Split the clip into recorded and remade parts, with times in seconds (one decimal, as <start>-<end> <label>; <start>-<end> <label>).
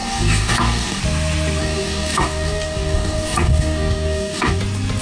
0.0-1.0 remade; 1.0-1.6 recorded; 1.6-4.6 remade; 4.6-5.0 recorded